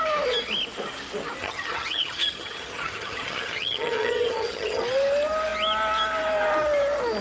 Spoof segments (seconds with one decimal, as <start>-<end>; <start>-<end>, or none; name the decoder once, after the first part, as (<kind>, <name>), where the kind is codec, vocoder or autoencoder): 1.4-4.8 (vocoder, HiFi-GAN)